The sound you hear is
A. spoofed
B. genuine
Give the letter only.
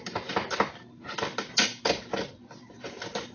A